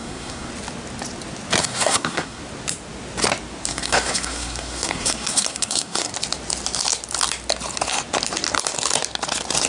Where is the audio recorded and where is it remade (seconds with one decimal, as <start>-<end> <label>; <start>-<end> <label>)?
0.0-0.5 remade; 0.5-1.6 recorded; 1.6-2.4 remade; 2.4-3.7 recorded; 3.7-6.1 remade; 6.1-9.7 recorded